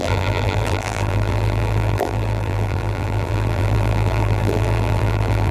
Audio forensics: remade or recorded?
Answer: remade